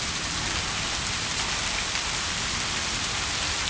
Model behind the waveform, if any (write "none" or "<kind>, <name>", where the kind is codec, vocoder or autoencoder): none